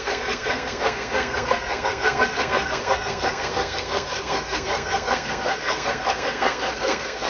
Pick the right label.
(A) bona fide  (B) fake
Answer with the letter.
B